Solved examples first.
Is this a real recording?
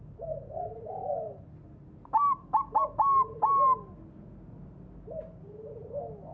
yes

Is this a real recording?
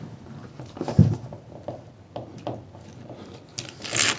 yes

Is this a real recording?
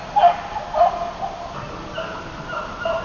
yes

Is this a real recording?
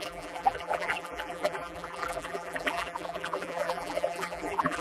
no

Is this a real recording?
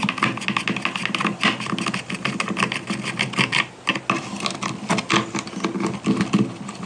yes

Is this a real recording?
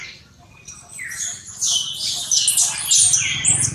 yes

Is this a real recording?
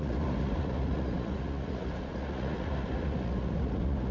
no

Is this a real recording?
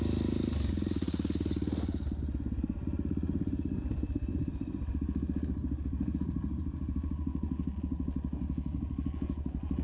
yes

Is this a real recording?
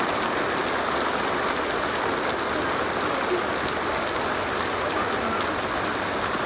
yes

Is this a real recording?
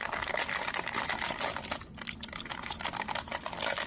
yes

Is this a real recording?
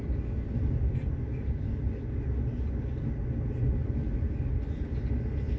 yes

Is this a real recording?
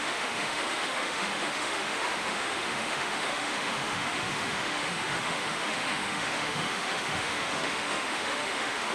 no